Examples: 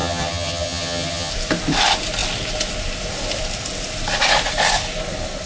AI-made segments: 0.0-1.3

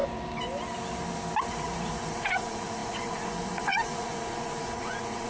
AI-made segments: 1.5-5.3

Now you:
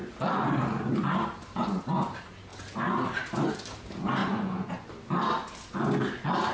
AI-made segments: 4.2-4.9

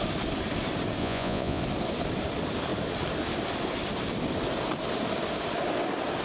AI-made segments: 1.0-1.6

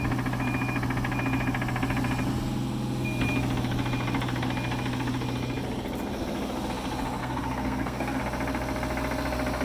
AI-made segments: 7.2-8.2

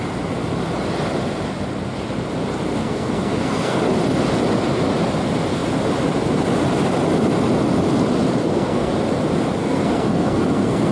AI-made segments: 2.8-3.8; 8.4-8.9; 9.6-10.9